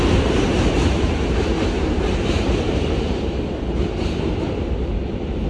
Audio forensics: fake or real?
fake